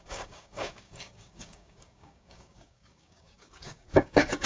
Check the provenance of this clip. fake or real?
fake